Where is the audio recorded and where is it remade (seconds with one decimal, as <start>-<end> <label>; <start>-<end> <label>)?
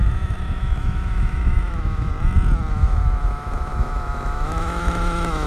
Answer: 0.0-2.1 remade; 2.1-2.7 recorded; 2.7-5.5 remade